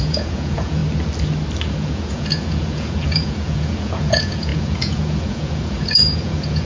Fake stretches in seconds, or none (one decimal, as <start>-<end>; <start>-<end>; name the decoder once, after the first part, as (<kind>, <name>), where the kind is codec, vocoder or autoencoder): 0.0-0.8 (vocoder, Vocos); 1.7-6.6